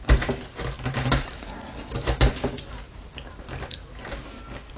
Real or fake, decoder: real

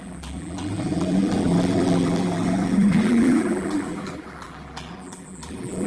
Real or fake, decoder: fake, vocoder, BigVGAN v2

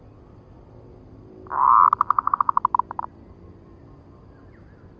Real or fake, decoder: real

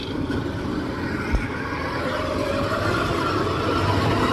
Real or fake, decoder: fake, vocoder, BigVGAN v2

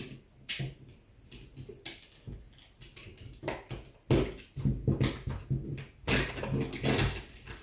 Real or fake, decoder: real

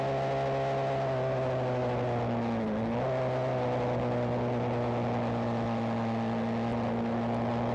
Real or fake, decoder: real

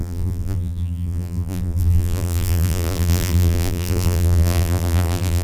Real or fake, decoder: fake, vocoder, BigVGAN v2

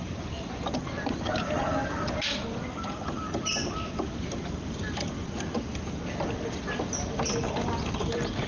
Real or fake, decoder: fake, vocoder, BigVGAN v2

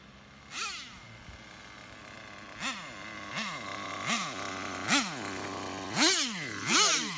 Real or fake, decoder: real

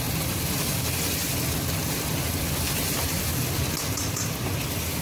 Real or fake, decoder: real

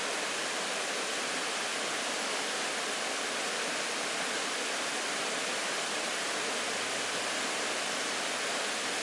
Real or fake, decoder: real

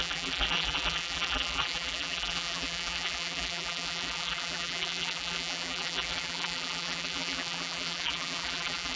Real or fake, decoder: fake, vocoder, BigVGAN v2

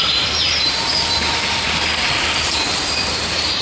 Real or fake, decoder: fake, vocoder, BigVGAN v2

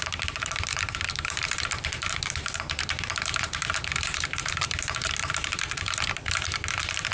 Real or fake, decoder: fake, vocoder, BigVGAN v2